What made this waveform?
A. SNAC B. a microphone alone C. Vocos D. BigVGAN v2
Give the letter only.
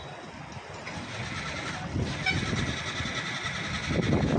B